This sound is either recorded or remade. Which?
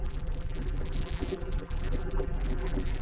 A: remade